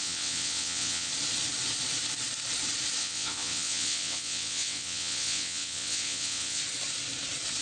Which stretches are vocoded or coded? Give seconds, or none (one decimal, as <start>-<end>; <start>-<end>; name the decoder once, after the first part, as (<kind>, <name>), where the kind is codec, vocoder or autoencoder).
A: 0.0-1.1 (vocoder, WaveNeXt); 3.0-6.6